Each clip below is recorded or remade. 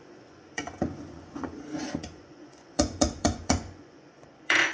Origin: remade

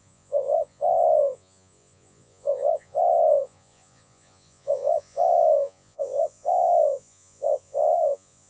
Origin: remade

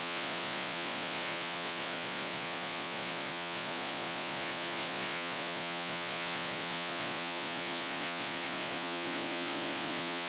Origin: remade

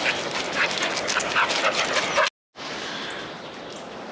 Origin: recorded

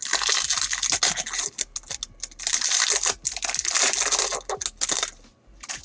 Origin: recorded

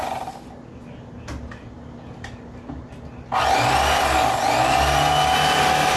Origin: recorded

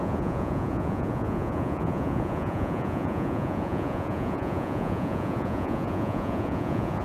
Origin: remade